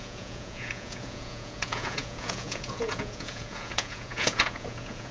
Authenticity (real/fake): fake